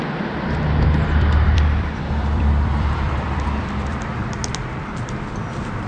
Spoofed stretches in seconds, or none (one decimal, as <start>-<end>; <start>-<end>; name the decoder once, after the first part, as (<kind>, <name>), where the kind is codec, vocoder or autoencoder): 0.0-4.2 (vocoder, BigVGAN v2); 4.8-5.9